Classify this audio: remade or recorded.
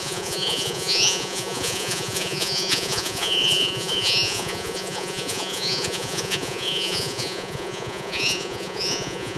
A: remade